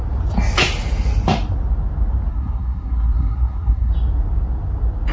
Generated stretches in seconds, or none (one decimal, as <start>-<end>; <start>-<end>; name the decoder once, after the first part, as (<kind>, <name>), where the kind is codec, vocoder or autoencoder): 2.3-3.9 (codec, SNAC)

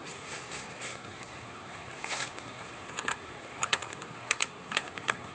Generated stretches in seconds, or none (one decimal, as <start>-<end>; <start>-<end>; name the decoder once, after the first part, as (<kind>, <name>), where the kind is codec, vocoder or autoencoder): 0.0-5.3 (codec, SNAC)

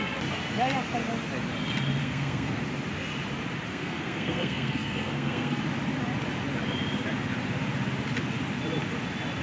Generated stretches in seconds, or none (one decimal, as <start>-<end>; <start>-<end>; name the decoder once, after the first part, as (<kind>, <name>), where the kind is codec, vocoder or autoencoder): 2.0-2.6 (codec, SNAC); 3.7-5.6

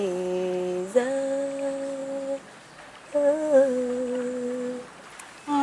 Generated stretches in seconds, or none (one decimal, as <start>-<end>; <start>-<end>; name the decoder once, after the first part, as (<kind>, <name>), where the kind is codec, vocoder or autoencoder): none

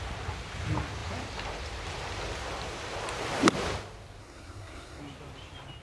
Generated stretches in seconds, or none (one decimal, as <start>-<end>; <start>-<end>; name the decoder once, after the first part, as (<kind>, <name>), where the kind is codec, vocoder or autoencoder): 4.2-5.0 (codec, SNAC)

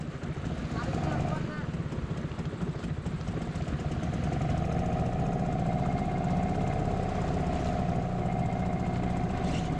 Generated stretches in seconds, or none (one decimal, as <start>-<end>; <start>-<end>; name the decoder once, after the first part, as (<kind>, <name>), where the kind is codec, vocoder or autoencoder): none

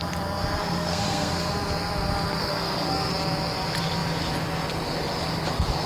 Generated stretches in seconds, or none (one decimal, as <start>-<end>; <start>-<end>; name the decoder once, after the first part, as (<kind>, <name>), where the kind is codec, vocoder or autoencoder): 0.6-1.5 (codec, SNAC); 2.4-3.1

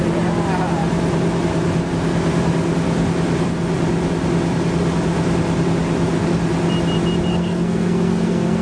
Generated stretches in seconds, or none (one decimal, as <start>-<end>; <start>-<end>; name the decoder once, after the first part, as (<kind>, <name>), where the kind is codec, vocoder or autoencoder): 7.3-8.6 (codec, SNAC)